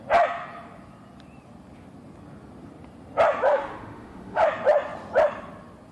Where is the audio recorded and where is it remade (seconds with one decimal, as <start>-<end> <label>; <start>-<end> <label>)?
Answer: 0.0-3.5 recorded; 3.5-4.4 remade; 4.4-5.9 recorded